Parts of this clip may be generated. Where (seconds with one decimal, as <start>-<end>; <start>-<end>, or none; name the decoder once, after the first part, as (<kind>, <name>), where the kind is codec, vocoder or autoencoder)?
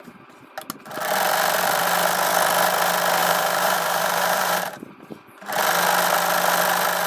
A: 3.2-5.2 (vocoder, BigVGAN v2)